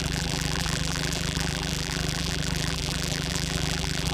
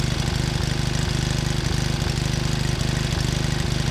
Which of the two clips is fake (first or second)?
first